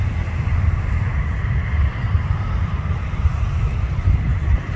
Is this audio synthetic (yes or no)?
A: yes